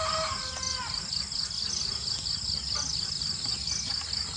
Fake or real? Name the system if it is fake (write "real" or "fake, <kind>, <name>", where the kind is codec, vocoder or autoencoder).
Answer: real